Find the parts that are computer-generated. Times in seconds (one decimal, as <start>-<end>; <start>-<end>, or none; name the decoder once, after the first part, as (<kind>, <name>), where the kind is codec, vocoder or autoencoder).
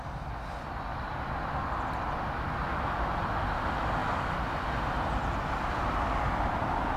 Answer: none